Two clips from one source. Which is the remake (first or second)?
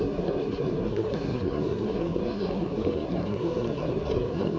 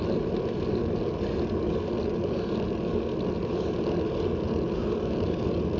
first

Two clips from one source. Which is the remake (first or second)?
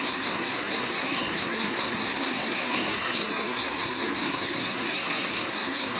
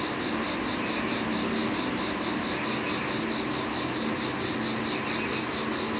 first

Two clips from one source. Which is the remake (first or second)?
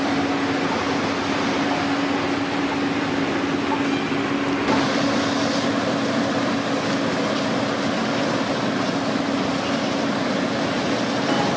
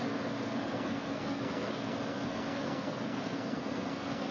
second